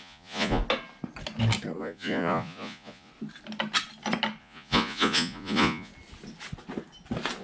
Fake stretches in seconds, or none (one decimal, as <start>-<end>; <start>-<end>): 0.0-0.6; 1.8-3.1; 4.4-5.9